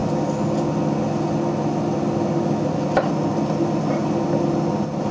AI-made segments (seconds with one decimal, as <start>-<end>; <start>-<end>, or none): none